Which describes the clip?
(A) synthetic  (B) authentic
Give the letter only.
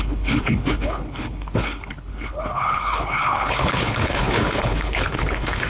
A